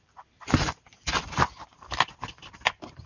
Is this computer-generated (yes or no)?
yes